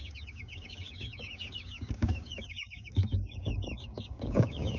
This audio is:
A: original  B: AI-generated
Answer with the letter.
B